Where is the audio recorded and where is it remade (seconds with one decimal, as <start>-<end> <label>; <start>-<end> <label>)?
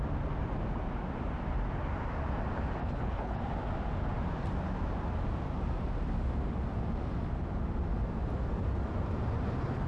0.0-2.8 recorded; 2.8-3.4 remade; 3.4-9.9 recorded